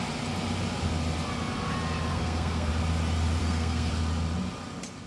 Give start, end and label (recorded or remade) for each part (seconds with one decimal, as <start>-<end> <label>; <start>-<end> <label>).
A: 0.0-2.1 recorded; 2.1-2.7 remade; 2.7-3.4 recorded; 3.4-3.9 remade; 3.9-5.1 recorded